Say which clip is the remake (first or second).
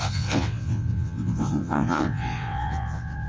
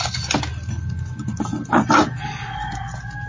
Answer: first